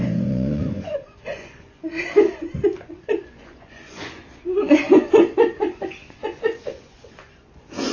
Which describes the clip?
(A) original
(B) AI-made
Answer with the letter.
B